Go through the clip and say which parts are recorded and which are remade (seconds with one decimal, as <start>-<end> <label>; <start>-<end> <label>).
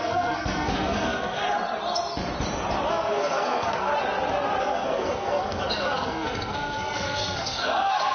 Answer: 0.0-1.4 remade; 1.4-2.9 recorded; 2.9-3.9 remade; 3.9-4.6 recorded; 4.6-8.1 remade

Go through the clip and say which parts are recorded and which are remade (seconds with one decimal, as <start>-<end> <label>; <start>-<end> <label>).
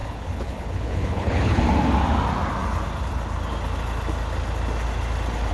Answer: 0.0-1.6 remade; 1.6-5.5 recorded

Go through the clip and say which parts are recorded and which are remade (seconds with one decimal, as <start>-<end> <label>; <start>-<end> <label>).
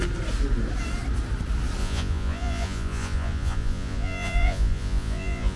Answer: 0.0-1.8 recorded; 1.8-5.6 remade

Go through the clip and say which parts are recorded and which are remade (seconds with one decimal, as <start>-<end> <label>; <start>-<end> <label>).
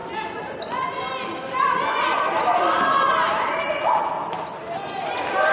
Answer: 0.0-5.5 recorded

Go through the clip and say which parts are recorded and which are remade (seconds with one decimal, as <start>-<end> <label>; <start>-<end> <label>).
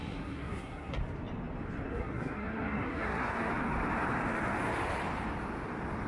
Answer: 0.0-1.0 remade; 1.0-1.9 recorded; 1.9-3.5 remade; 3.5-6.1 recorded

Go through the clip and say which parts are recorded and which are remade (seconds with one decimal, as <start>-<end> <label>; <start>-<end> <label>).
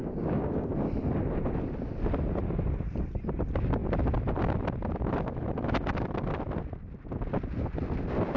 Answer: 0.0-0.7 remade; 0.7-8.4 recorded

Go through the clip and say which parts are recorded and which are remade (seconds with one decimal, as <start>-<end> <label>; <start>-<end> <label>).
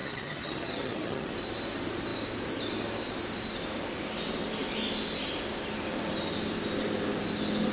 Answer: 0.0-1.3 remade; 1.3-7.7 recorded